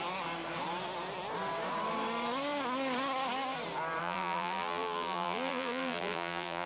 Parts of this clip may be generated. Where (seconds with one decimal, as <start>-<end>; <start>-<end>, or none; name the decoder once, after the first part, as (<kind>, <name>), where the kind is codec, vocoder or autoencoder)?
4.0-6.7 (vocoder, BigVGAN v2)